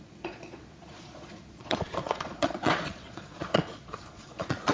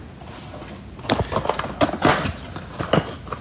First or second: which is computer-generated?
first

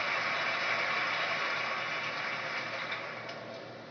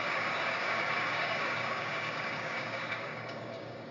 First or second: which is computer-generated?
second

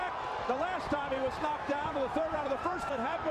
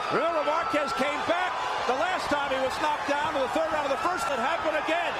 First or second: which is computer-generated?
first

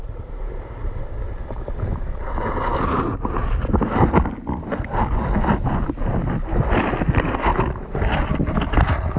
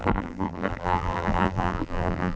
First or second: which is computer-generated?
second